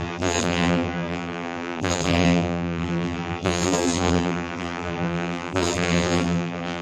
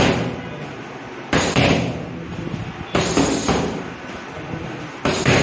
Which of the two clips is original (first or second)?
second